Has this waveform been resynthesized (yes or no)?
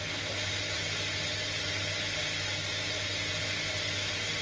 no